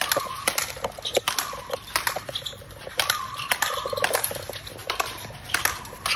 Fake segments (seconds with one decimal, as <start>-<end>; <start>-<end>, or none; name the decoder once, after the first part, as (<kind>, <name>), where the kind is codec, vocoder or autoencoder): none